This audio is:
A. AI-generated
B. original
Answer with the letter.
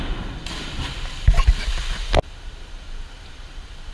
B